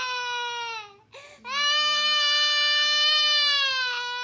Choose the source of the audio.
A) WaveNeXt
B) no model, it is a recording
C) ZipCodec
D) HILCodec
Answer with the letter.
B